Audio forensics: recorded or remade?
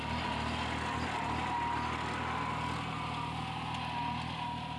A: recorded